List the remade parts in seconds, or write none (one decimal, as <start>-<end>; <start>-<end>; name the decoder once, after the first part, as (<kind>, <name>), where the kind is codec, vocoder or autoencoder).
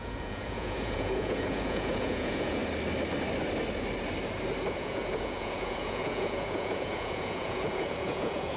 0.0-2.6 (vocoder, Vocos); 4.7-8.6